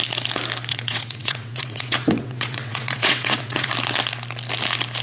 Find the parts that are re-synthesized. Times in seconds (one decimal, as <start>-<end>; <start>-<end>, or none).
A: 0.7-3.7